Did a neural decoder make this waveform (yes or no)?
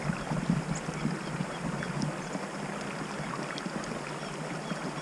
no